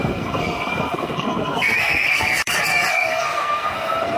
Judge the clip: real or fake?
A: fake